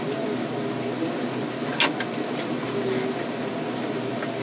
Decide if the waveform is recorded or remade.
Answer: recorded